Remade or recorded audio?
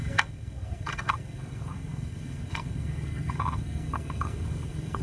remade